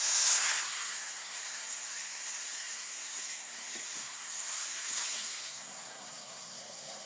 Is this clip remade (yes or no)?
yes